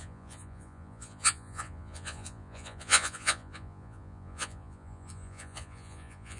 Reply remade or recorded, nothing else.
remade